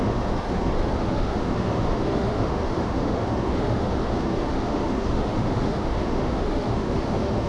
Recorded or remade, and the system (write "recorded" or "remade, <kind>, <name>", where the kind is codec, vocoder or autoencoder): remade, autoencoder, DAC-VAE